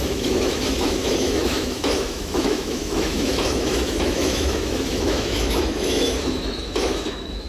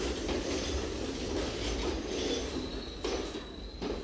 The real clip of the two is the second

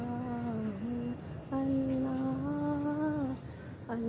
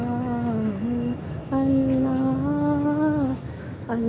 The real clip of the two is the first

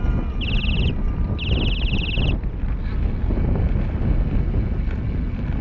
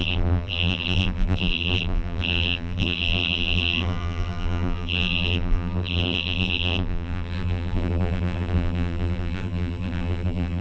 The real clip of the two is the first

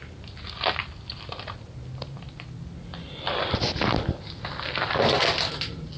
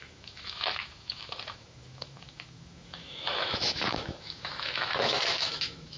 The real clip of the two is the first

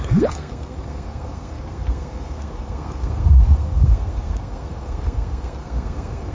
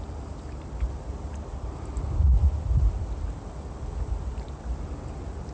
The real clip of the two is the second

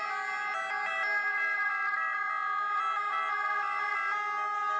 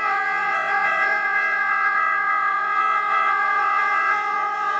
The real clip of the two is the first